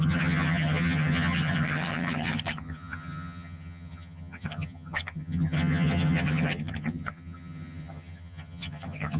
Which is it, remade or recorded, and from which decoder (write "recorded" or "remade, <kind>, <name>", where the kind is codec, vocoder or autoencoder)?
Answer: remade, vocoder, HiFi-GAN